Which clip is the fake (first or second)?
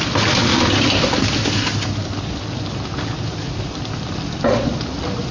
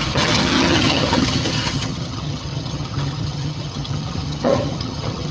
second